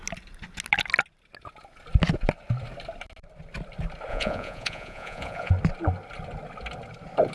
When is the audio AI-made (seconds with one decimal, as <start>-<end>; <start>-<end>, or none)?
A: 4.1-5.5